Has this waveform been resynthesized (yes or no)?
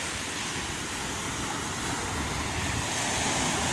no